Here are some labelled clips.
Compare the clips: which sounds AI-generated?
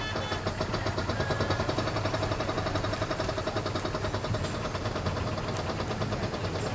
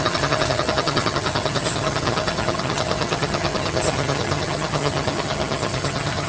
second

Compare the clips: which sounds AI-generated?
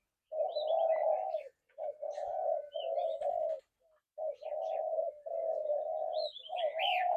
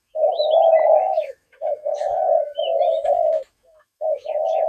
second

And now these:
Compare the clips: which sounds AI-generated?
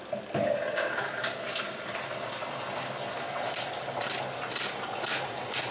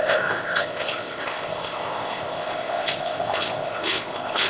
second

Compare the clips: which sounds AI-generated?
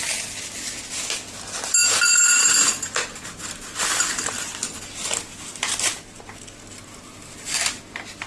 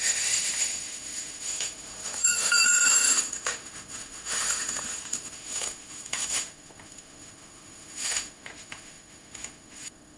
second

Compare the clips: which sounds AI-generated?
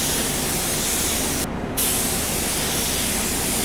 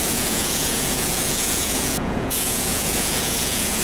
second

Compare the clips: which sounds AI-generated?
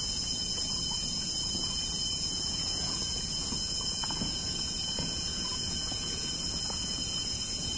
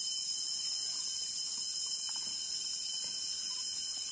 first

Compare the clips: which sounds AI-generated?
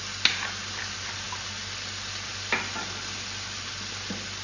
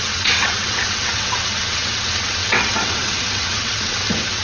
second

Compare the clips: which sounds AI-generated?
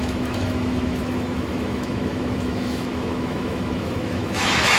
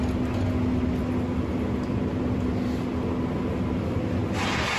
first